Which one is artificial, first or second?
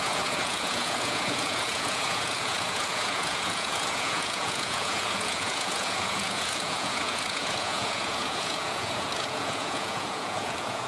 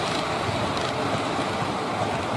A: first